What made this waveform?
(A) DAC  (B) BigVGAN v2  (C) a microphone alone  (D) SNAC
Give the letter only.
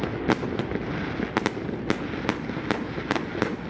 C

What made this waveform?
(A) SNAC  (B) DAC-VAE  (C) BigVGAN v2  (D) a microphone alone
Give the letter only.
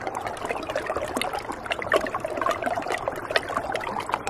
D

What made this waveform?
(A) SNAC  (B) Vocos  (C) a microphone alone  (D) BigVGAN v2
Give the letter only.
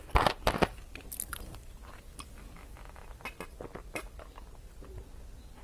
C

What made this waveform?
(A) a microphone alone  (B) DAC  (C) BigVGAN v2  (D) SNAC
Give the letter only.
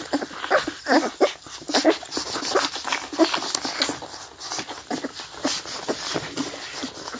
A